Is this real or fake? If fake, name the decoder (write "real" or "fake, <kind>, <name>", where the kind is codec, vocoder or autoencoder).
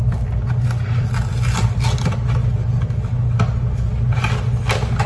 real